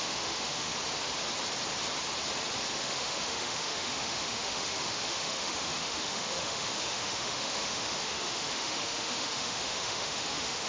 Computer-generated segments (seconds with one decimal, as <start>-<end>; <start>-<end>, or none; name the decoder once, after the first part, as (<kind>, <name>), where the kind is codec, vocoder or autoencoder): 0.0-0.7 (autoencoder, DAC-VAE); 2.8-10.7